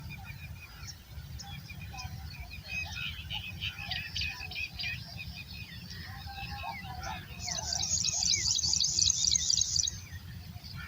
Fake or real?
real